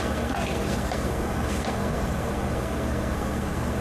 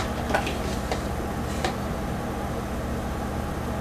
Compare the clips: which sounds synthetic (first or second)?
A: first